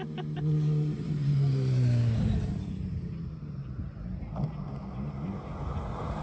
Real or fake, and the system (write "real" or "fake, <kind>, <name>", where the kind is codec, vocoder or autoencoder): real